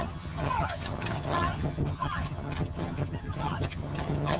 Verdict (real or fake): fake